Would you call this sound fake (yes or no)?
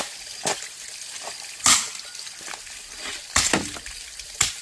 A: no